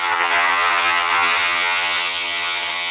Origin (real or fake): fake